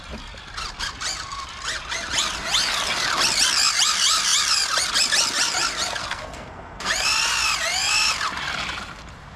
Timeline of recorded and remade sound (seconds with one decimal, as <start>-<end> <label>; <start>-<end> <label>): 0.0-6.0 recorded; 6.0-6.9 remade; 6.9-9.4 recorded